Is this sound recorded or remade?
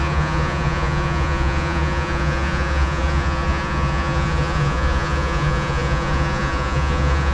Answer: remade